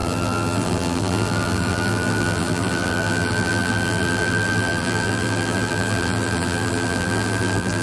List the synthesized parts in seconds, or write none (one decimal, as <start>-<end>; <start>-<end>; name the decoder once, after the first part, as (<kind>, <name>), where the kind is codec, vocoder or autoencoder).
0.0-7.8 (vocoder, BigVGAN v2)

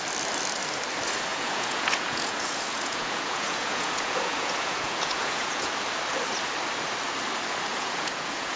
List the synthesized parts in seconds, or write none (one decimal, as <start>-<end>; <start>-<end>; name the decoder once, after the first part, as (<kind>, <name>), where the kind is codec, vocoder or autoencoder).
1.3-5.7 (vocoder, Vocos); 7.7-8.6

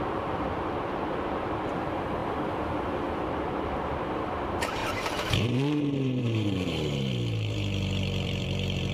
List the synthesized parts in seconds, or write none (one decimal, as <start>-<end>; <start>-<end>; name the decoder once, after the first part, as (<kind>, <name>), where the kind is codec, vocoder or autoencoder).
0.0-8.9 (vocoder, BigVGAN v2)

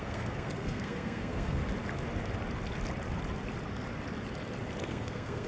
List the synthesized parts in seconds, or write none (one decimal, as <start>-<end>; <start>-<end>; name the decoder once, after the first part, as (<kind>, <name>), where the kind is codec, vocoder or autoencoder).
0.0-1.6 (codec, SNAC); 4.8-5.5

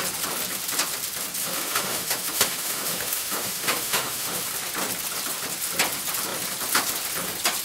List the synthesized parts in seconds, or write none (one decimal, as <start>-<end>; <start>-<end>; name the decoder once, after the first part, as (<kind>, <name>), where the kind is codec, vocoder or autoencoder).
1.4-4.4 (autoencoder, DAC-VAE)